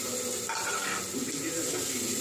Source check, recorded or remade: recorded